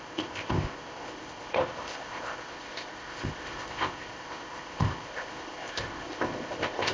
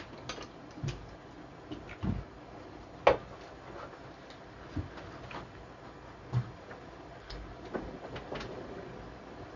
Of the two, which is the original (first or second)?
second